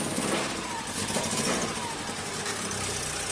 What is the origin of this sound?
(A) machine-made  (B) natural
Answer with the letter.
B